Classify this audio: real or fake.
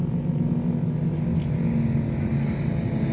real